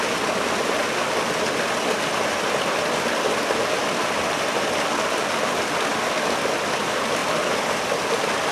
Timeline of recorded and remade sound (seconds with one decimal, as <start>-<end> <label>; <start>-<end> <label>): 0.0-8.5 recorded